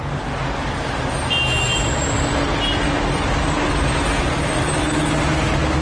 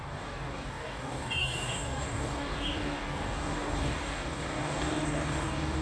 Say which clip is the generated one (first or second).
second